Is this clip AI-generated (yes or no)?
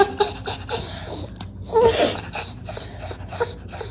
no